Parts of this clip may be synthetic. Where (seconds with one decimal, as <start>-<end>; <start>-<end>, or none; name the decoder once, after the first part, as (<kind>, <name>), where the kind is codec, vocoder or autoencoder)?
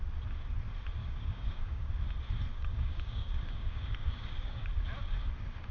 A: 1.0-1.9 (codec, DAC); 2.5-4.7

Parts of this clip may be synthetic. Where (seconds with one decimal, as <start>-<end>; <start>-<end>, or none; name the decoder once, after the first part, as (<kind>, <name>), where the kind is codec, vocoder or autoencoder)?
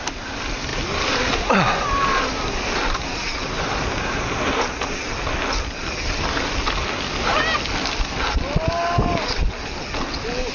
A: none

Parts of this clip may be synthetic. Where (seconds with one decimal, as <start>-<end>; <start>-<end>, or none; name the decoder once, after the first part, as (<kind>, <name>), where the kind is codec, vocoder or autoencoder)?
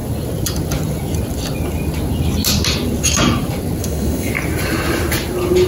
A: 3.8-4.3 (autoencoder, DAC-VAE)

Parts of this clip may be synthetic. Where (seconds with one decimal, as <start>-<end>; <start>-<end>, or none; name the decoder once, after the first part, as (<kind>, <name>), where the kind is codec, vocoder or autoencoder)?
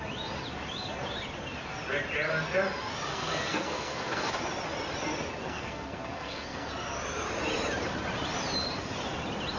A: 3.1-4.3 (codec, SNAC); 5.4-6.7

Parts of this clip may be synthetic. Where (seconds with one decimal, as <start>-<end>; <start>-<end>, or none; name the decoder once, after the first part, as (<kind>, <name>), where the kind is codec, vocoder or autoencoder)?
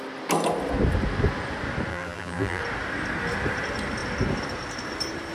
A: 1.9-2.6 (vocoder, BigVGAN v2)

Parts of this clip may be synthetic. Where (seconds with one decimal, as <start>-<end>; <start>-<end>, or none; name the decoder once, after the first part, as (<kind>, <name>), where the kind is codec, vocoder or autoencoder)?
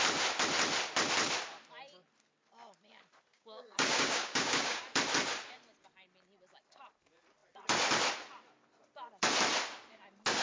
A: 3.3-4.8 (codec, DAC)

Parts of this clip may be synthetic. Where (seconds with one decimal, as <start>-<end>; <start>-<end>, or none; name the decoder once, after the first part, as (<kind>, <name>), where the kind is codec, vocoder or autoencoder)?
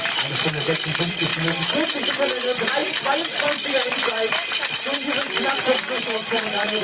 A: 0.0-1.3 (vocoder, BigVGAN v2); 2.1-6.8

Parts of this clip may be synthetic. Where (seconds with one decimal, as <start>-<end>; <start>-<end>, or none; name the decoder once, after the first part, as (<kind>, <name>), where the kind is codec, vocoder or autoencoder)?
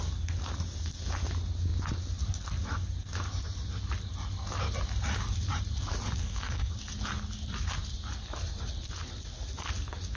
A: 6.2-6.7 (codec, SNAC)